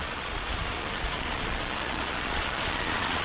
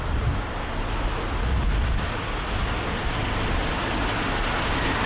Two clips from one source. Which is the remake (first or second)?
first